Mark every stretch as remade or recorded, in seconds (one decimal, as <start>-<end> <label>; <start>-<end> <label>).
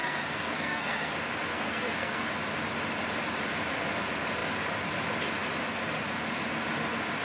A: 0.0-1.1 remade; 1.1-1.5 recorded; 1.5-2.3 remade; 2.3-7.2 recorded